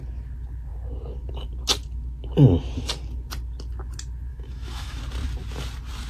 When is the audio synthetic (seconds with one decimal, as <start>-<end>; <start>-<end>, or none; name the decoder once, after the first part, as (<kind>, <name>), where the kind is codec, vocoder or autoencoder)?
4.3-5.0 (autoencoder, DAC-VAE)